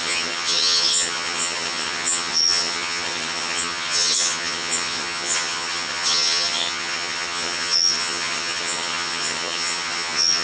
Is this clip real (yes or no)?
no